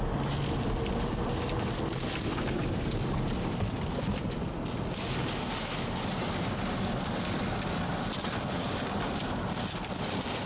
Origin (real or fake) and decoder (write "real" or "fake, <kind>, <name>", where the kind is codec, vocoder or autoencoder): real